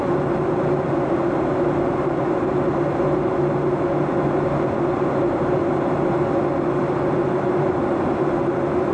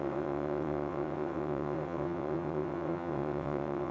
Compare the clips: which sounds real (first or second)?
first